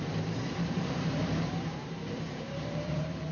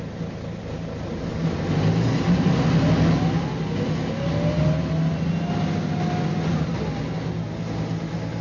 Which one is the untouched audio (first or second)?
second